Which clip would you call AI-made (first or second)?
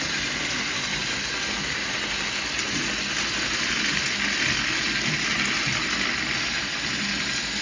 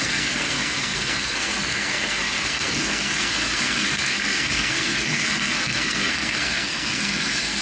second